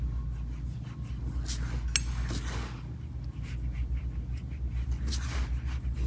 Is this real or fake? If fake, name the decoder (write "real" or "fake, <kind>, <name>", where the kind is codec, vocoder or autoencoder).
real